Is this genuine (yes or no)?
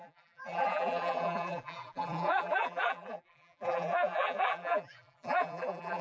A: no